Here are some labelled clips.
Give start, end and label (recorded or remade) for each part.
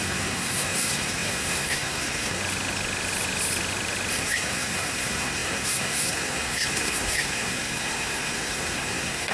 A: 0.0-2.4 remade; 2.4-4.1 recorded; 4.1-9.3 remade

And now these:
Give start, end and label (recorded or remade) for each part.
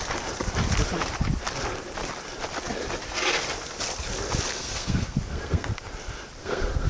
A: 0.0-4.5 recorded; 4.5-5.7 remade; 5.7-6.4 recorded; 6.4-6.9 remade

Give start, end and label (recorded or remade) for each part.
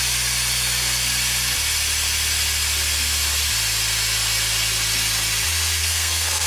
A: 0.0-5.8 recorded; 5.8-6.5 remade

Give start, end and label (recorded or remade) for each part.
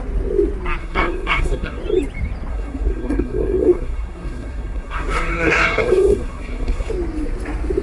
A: 0.0-0.8 recorded; 0.8-1.8 remade; 1.8-2.5 recorded; 2.5-6.9 remade; 6.9-7.8 recorded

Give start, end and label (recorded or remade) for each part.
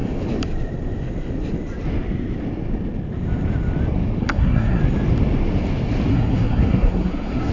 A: 0.0-4.2 recorded; 4.2-4.8 remade; 4.8-6.1 recorded; 6.1-7.5 remade